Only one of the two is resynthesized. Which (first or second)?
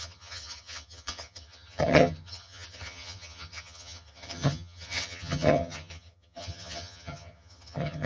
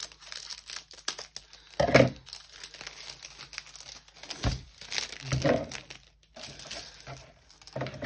first